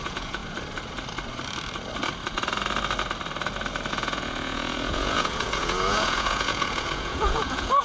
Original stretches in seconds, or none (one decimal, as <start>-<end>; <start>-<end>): 0.4-3.9